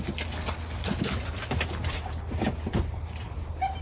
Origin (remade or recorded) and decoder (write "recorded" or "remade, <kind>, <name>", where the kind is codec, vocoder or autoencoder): recorded